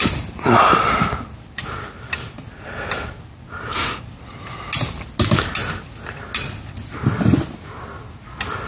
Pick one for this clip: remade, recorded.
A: recorded